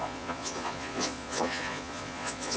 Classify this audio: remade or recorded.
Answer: remade